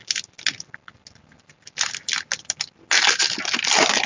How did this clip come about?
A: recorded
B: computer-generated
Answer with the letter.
A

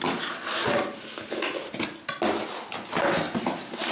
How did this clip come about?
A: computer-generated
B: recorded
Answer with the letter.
B